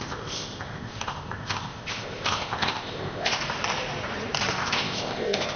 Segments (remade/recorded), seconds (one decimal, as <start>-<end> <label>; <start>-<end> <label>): 0.0-3.4 remade; 3.4-4.6 recorded; 4.6-5.6 remade